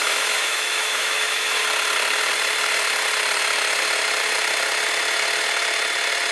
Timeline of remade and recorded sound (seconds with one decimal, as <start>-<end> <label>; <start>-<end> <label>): 0.0-1.6 remade; 1.6-6.3 recorded